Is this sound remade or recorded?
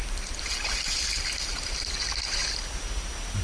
recorded